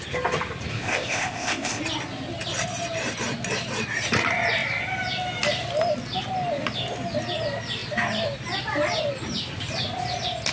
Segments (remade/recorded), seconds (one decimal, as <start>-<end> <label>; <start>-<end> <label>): 0.0-0.7 recorded; 0.7-1.8 remade; 1.8-10.5 recorded